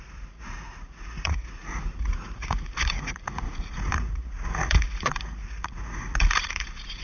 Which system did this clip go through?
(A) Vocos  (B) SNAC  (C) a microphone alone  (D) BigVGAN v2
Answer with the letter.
A